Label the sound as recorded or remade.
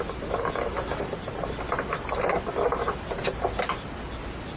recorded